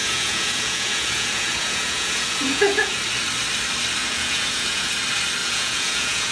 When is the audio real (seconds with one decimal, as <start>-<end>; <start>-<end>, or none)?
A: 3.0-4.0; 4.9-5.4